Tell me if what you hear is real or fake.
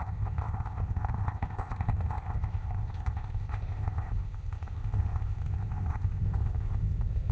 fake